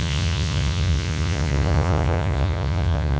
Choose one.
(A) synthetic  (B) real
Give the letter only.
A